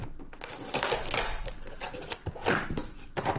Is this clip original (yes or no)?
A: yes